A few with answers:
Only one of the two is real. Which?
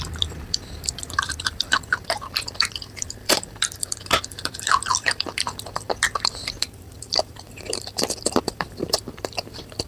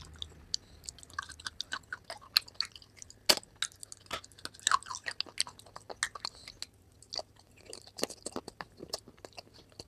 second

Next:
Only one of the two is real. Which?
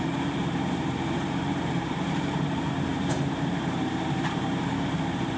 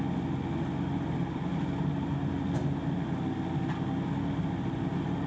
second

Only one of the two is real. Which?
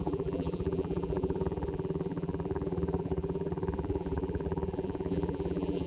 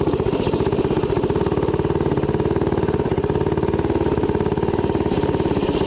second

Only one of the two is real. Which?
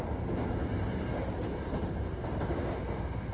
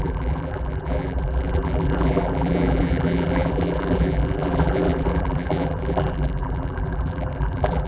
first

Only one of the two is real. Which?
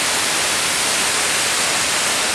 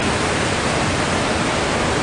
second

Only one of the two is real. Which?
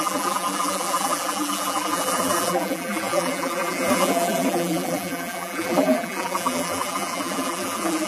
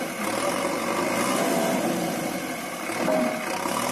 second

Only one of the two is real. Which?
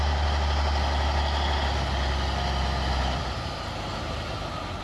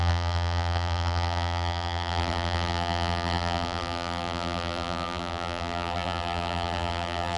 first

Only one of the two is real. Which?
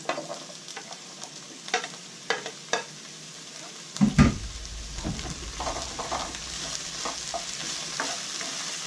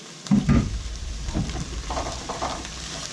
first